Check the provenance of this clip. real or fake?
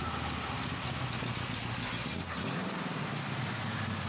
real